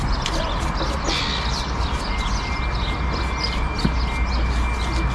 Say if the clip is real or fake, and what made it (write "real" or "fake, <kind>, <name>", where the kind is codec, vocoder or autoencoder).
real